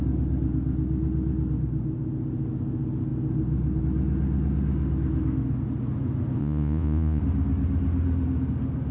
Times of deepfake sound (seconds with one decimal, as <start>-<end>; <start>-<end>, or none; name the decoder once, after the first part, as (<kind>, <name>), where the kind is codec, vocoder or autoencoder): 6.4-7.2 (vocoder, Vocos)

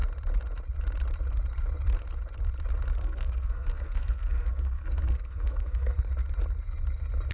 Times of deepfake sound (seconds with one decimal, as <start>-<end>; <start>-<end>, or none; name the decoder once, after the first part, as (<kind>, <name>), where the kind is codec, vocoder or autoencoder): 3.0-6.1 (codec, SNAC)

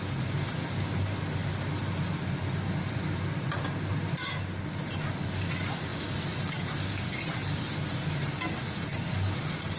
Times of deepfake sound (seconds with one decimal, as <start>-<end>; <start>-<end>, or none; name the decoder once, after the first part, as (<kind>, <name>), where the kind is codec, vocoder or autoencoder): none